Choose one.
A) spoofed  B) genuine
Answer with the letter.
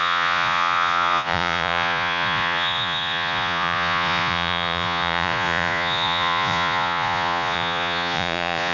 A